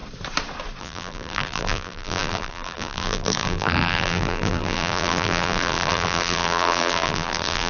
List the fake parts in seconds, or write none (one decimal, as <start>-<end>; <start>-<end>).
0.8-7.7